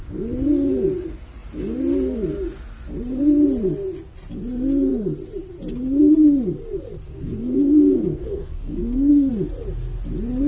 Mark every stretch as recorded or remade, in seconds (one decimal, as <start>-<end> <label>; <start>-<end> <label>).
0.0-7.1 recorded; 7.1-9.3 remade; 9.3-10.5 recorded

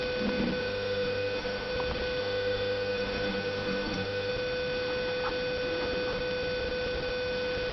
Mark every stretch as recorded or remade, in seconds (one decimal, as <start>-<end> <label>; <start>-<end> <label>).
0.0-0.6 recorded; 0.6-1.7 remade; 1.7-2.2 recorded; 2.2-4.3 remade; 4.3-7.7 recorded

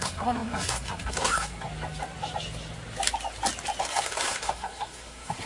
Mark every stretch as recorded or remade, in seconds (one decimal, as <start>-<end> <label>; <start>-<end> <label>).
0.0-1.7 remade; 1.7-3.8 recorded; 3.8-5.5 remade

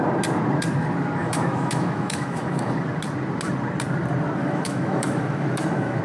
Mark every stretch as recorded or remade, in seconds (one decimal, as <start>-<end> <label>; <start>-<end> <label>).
0.0-1.2 recorded; 1.2-2.7 remade; 2.7-4.4 recorded; 4.4-6.0 remade